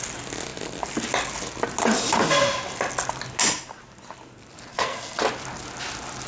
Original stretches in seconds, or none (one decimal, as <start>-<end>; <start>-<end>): 0.0-4.7; 5.2-6.3

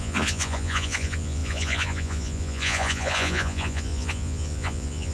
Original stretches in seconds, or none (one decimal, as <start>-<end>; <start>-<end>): none

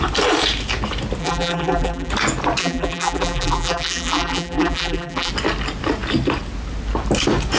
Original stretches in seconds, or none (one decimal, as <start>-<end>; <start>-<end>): 0.0-1.2; 2.1-2.6; 5.3-7.6

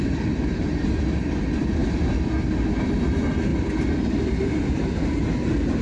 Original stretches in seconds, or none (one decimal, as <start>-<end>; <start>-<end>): 0.0-3.5; 4.9-5.8

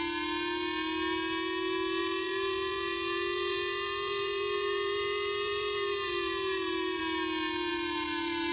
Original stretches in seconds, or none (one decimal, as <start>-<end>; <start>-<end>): 0.0-2.0; 7.0-7.7

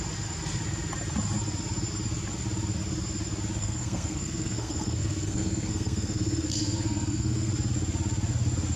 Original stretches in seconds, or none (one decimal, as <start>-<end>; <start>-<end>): 0.0-3.6; 7.5-8.8

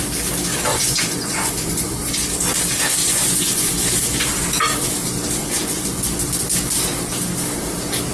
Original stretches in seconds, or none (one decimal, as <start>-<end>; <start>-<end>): 0.0-0.7; 2.0-3.0; 3.7-5.4; 6.0-8.1